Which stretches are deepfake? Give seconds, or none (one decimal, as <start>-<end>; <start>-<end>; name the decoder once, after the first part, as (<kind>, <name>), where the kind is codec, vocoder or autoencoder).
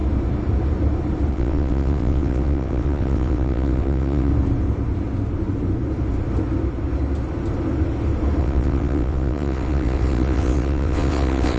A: 1.3-4.3 (vocoder, WaveNeXt); 8.4-11.6